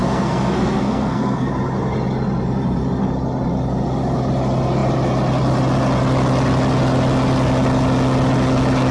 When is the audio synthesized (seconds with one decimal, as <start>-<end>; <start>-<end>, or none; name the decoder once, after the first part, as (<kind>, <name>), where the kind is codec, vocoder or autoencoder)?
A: 0.0-1.5 (codec, SNAC)